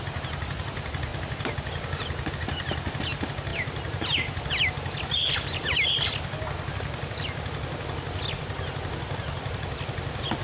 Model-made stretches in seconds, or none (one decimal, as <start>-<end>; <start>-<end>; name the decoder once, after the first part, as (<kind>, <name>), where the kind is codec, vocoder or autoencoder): none